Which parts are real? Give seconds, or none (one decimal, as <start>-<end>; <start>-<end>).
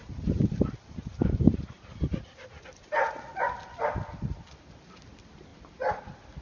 0.0-6.4